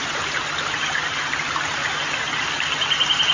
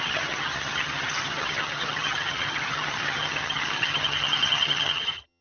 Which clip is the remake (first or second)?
second